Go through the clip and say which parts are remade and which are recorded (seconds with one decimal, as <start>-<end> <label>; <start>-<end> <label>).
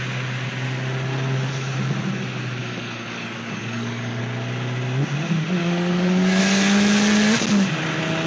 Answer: 0.0-2.6 recorded; 2.6-4.2 remade; 4.2-5.6 recorded; 5.6-6.4 remade; 6.4-8.3 recorded